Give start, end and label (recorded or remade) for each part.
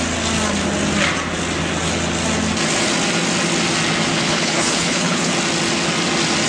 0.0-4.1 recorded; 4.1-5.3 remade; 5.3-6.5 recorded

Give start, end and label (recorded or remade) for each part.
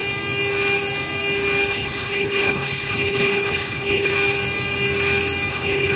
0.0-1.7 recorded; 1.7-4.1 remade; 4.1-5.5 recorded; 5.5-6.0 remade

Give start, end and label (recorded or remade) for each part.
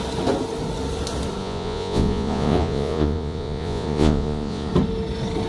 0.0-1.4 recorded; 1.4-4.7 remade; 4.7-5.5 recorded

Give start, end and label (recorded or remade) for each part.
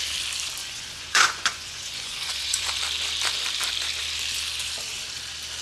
0.0-0.6 recorded; 0.6-2.8 remade; 2.8-5.6 recorded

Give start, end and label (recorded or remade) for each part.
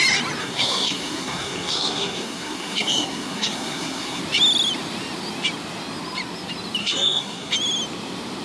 0.0-0.4 recorded; 0.4-4.2 remade; 4.2-6.8 recorded; 6.8-7.5 remade; 7.5-8.4 recorded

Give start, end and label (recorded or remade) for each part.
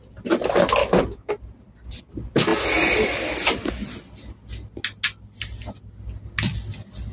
0.0-0.8 recorded; 0.8-1.3 remade; 1.3-7.1 recorded